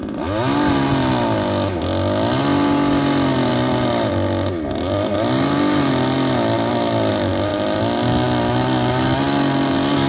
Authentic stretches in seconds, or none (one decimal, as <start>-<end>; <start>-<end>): 0.0-10.1